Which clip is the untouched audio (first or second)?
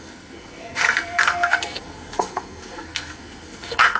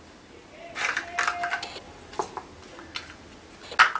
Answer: second